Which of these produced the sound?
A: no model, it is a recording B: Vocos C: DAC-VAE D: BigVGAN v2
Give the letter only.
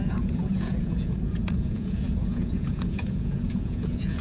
B